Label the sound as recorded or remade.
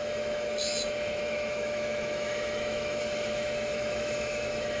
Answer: remade